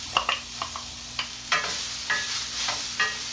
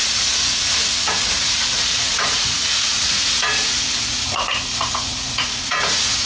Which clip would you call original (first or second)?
first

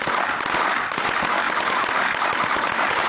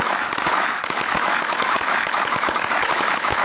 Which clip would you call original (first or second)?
first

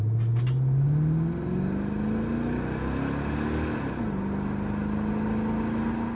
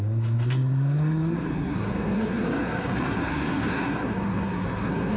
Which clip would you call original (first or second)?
first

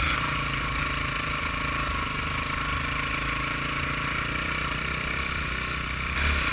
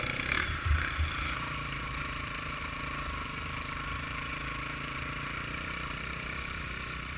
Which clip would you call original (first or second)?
first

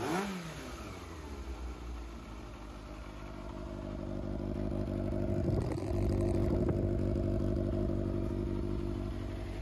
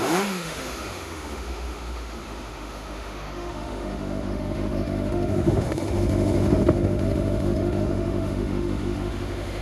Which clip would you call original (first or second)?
first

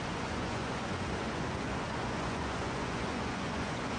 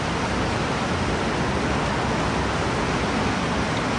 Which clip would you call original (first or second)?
second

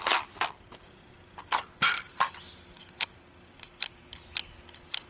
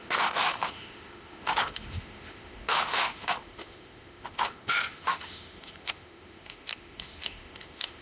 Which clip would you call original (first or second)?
first